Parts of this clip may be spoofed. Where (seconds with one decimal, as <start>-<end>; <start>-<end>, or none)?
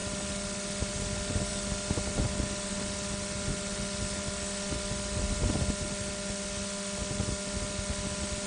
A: 1.5-2.7